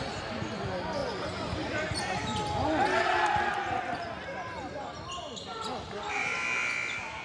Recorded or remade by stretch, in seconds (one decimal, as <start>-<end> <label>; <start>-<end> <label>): 0.0-1.0 recorded; 1.0-3.8 remade; 3.8-7.2 recorded